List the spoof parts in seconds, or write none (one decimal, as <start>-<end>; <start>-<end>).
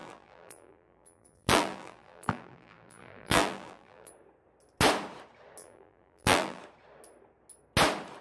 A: 0.0-4.1; 5.6-6.6